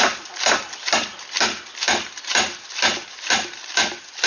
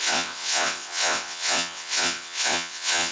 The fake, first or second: second